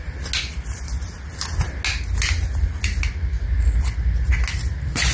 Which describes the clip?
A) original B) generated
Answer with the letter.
A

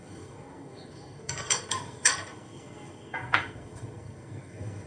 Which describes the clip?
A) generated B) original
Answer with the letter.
A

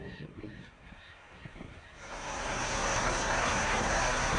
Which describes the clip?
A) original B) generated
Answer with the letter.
B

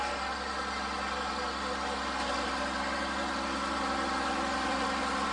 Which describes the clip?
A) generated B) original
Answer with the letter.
B